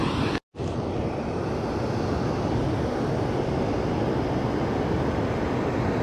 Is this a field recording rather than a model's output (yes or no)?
yes